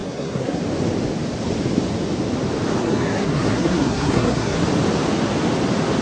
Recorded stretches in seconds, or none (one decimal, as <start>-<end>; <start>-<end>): 0.6-2.8; 4.6-6.0